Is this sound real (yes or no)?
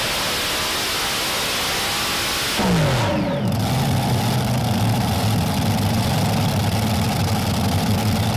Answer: yes